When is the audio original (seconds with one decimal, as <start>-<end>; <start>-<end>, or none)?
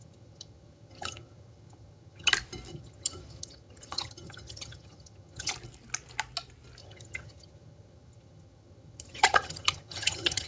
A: 2.3-2.7; 5.5-6.8